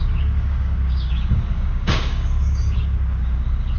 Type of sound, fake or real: fake